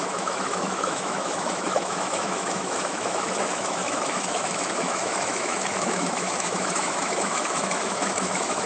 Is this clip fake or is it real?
fake